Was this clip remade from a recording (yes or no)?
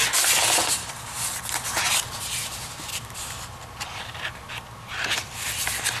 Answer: no